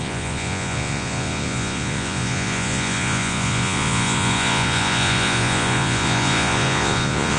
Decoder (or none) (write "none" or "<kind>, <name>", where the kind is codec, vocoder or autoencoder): vocoder, Vocos